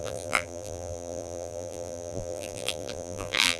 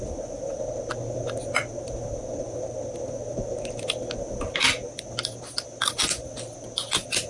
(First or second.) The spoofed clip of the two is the first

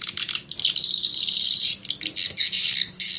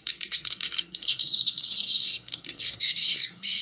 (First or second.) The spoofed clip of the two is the second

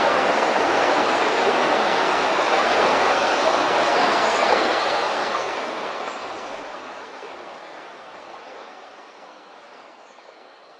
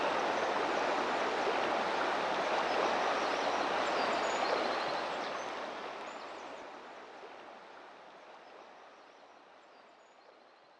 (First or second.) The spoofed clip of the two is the first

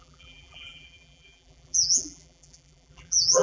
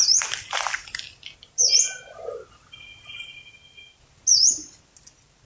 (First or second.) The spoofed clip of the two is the first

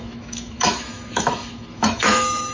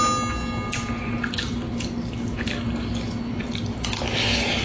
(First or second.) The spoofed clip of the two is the first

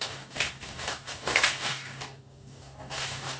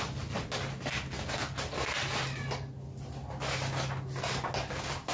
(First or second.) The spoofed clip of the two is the first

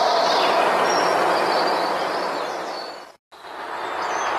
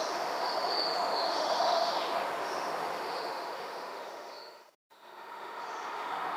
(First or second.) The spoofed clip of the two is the second